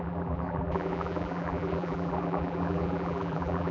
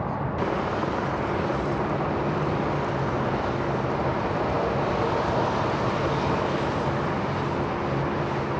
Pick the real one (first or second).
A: second